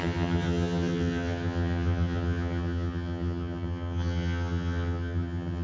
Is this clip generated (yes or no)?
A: yes